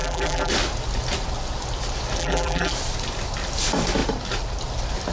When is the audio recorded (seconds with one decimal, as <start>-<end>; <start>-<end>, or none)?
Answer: 0.5-2.2; 2.7-5.1